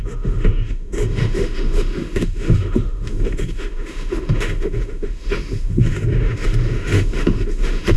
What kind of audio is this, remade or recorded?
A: remade